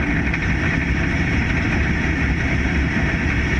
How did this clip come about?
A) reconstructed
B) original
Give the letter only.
B